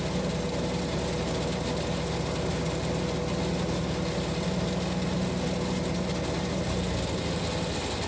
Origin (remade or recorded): recorded